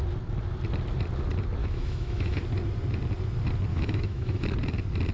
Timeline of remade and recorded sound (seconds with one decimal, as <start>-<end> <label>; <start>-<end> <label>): 0.0-1.6 recorded; 1.6-2.4 remade; 2.4-3.7 recorded; 3.7-4.5 remade; 4.5-5.1 recorded